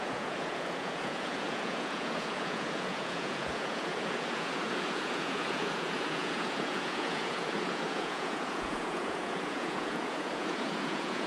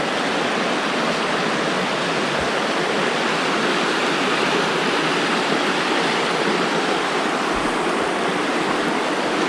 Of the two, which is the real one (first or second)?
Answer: second